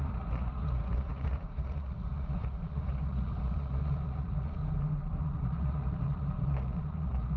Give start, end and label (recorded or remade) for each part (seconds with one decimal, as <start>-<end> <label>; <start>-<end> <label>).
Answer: 0.0-4.6 remade; 4.6-5.2 recorded; 5.2-7.4 remade